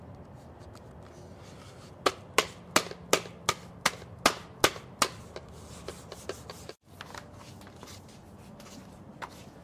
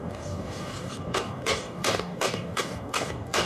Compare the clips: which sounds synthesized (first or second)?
second